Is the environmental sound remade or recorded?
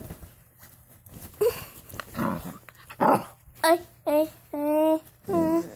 recorded